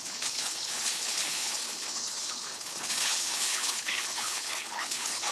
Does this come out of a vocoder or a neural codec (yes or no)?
yes